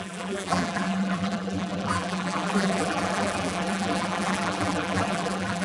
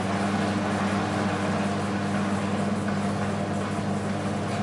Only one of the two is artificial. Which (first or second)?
first